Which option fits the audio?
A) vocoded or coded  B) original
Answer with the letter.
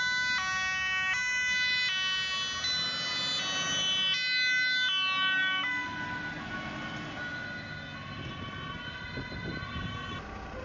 B